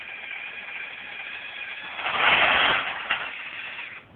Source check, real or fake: real